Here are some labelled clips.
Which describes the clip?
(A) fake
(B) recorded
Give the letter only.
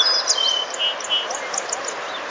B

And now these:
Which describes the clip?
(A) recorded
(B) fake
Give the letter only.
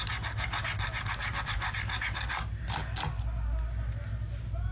A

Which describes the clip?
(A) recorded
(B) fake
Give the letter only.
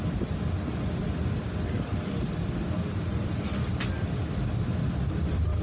A